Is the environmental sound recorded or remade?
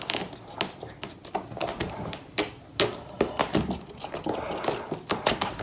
recorded